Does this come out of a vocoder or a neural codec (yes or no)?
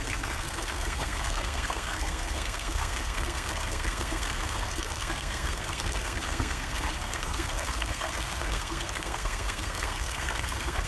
yes